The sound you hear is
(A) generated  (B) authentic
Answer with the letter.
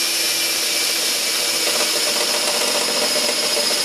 B